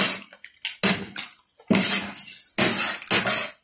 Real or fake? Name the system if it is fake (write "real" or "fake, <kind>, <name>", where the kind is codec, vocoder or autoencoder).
real